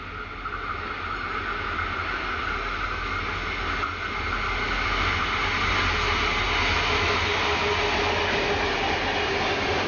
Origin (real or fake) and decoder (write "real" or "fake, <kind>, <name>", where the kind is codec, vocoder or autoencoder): real